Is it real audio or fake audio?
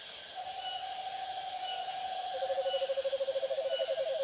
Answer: real